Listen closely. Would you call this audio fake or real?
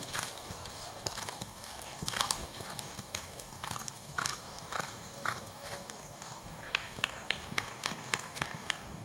fake